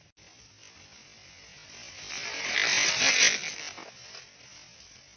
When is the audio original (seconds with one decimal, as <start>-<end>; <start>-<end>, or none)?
0.0-5.2